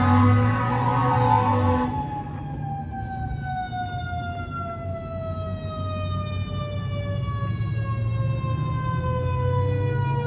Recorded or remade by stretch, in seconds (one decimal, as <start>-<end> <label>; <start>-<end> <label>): 0.0-10.3 recorded